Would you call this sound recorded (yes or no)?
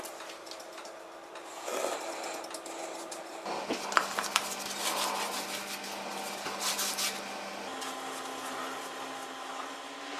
yes